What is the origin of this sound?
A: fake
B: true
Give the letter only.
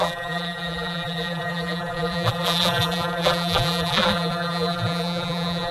A